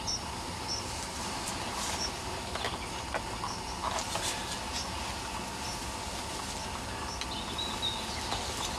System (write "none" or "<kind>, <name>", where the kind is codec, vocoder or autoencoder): none